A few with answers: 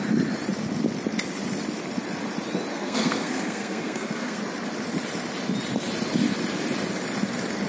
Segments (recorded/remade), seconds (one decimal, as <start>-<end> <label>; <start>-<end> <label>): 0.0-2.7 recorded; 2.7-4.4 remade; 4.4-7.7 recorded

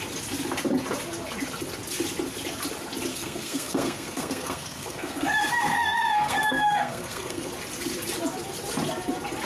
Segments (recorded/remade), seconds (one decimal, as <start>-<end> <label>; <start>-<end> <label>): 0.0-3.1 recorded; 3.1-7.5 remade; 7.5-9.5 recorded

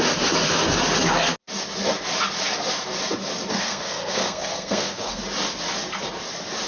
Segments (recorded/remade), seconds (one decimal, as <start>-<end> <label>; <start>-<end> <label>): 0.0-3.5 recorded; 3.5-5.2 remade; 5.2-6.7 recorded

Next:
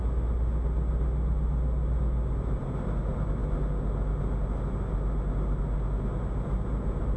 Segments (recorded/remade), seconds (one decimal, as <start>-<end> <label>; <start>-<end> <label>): 0.0-7.2 recorded

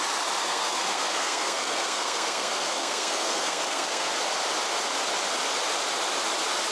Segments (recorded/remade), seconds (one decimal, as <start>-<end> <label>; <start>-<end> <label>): 0.0-0.4 recorded; 0.4-4.1 remade; 4.1-6.7 recorded